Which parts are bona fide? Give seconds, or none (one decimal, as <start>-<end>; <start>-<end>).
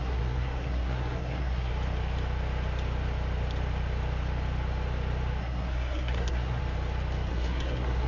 1.7-5.4; 6.6-7.3